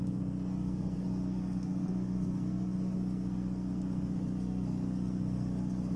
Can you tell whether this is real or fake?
fake